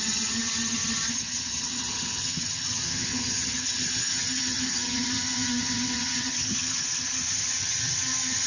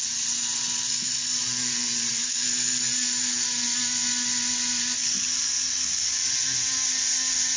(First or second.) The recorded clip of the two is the second